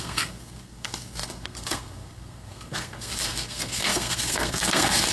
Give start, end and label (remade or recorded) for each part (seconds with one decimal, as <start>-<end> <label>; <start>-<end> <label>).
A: 0.0-5.1 remade